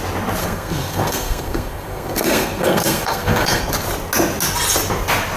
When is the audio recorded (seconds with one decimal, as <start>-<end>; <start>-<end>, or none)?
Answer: 0.0-0.4; 3.6-5.4